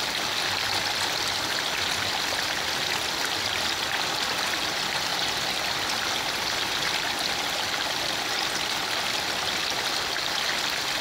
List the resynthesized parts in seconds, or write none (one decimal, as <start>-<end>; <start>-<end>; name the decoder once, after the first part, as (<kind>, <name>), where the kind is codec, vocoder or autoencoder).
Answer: none